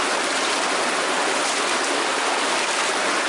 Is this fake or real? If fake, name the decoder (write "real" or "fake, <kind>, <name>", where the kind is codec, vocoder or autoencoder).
real